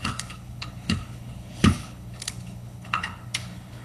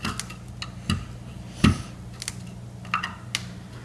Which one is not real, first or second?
first